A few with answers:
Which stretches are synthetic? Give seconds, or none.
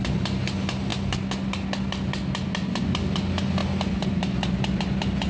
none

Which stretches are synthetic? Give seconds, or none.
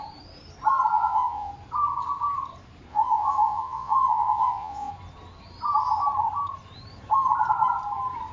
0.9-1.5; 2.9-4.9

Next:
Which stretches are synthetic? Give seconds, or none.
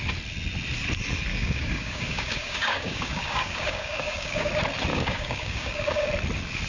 1.3-4.5; 4.9-6.1